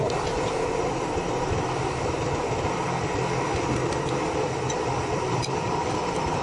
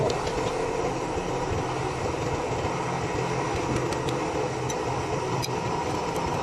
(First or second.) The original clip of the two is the second